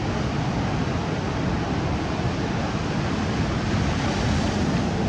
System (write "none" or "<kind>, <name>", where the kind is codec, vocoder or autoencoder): vocoder, BigVGAN v2